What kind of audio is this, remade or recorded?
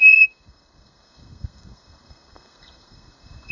remade